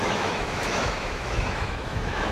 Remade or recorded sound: remade